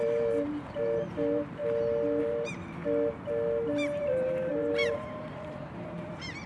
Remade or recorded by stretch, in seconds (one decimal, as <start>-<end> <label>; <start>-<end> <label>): 0.0-1.6 remade; 1.6-2.2 recorded; 2.2-2.8 remade; 2.8-4.0 recorded; 4.0-6.5 remade